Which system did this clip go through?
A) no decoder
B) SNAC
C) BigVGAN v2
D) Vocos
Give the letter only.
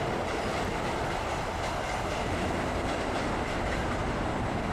C